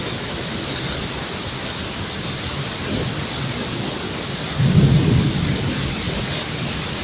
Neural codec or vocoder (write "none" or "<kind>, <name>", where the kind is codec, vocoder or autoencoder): none